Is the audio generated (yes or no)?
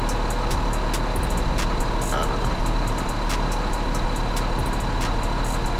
no